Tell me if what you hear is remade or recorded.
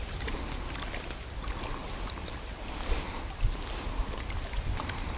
recorded